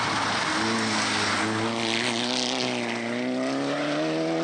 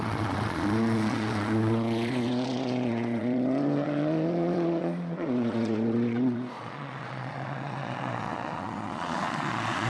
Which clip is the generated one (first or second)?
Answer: second